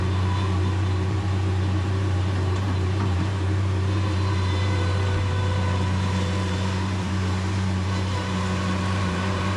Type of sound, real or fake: fake